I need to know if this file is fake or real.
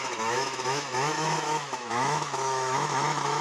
fake